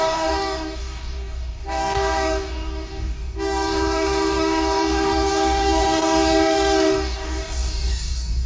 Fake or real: fake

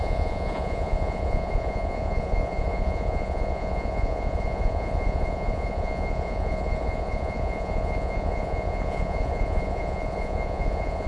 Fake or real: fake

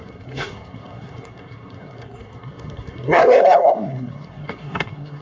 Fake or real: fake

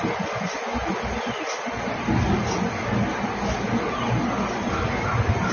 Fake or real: real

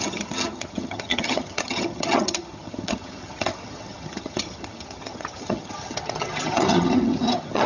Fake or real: fake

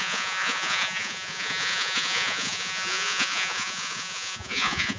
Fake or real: fake